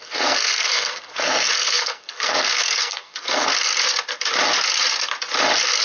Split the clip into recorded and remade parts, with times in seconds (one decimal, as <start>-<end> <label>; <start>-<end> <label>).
0.0-3.5 remade; 3.5-5.8 recorded